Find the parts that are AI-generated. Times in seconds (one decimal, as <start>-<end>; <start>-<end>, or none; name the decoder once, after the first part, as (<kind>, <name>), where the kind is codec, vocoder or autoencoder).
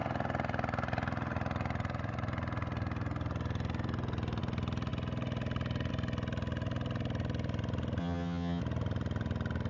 8.0-8.6 (vocoder, HiFi-GAN)